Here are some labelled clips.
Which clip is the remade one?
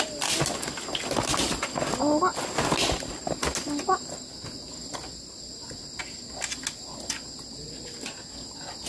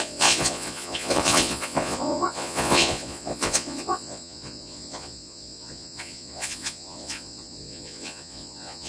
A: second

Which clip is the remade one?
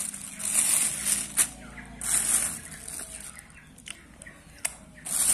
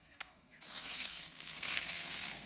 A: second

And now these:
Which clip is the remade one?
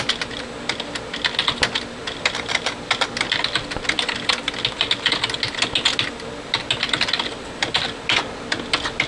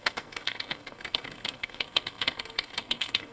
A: second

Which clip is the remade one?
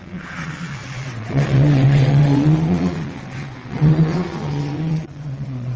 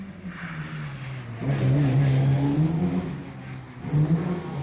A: first